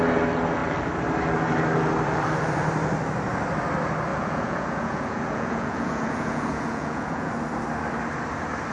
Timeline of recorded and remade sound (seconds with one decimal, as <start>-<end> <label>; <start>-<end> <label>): 0.0-4.1 recorded; 4.1-7.3 remade; 7.3-8.7 recorded